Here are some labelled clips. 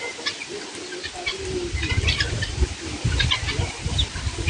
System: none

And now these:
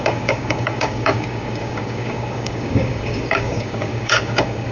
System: codec, DAC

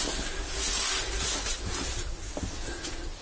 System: none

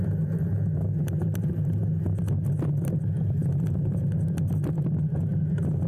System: none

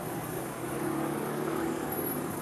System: codec, DAC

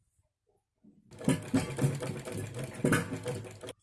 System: none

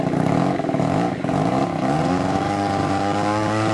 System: codec, DAC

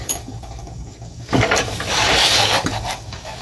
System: codec, DAC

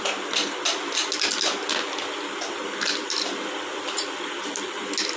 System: none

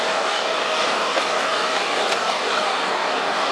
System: codec, DAC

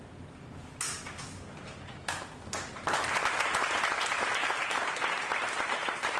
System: none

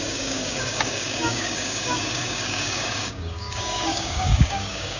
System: codec, DAC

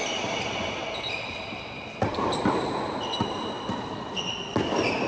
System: none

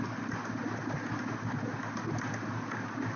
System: none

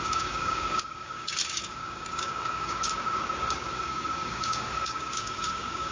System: codec, DAC